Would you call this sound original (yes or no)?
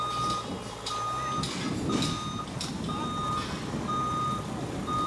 yes